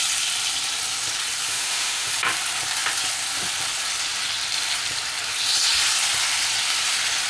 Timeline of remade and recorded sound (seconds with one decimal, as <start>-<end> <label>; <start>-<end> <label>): 0.0-1.5 recorded; 1.5-2.1 remade; 2.1-7.3 recorded